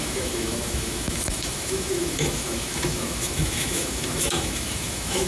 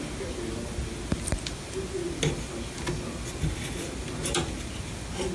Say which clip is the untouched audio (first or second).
second